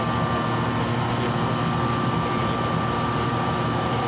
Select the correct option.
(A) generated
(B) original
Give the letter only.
B